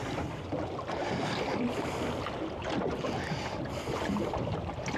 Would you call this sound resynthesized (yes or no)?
no